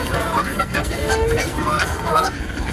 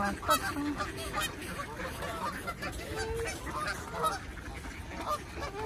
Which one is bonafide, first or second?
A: second